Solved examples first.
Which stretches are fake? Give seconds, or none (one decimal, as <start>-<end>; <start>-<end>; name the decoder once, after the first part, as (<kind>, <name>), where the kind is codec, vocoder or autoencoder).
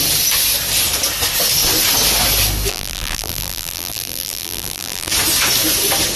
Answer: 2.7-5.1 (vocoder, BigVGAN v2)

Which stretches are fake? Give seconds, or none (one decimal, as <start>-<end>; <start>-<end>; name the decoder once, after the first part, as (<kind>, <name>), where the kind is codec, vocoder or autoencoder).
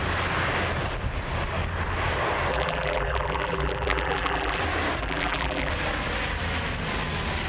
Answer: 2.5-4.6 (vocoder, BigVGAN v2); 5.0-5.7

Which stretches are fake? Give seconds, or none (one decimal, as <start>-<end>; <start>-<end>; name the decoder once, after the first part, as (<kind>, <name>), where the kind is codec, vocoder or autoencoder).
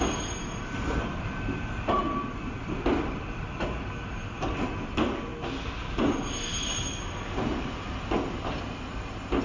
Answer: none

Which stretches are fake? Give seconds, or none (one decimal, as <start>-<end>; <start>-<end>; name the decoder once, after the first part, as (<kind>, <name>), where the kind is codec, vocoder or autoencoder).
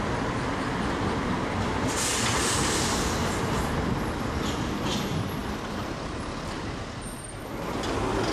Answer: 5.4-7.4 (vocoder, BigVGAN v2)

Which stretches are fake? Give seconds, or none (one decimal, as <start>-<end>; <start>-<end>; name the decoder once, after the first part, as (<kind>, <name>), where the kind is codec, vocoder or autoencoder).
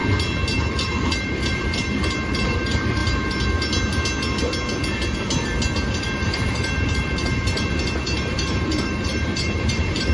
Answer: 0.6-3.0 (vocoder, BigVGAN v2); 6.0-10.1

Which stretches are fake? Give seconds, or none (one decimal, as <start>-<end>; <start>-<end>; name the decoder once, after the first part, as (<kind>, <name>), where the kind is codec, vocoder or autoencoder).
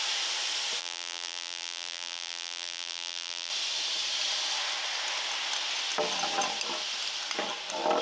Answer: 0.8-3.5 (vocoder, BigVGAN v2)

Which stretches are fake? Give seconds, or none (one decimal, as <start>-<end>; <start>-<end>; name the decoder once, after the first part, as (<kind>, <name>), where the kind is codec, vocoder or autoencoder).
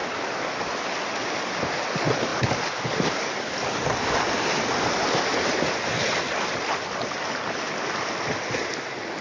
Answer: none